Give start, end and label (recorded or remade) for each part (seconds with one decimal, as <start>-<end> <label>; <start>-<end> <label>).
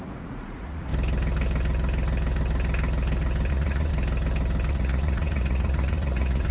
0.0-0.9 remade; 0.9-3.5 recorded; 3.5-3.9 remade; 3.9-4.7 recorded; 4.7-6.5 remade